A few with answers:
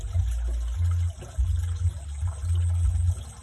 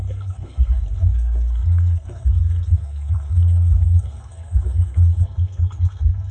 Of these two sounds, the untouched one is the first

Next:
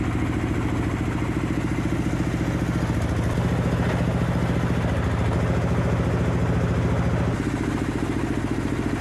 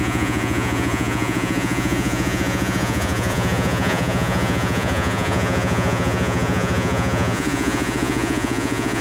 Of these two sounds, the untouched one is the first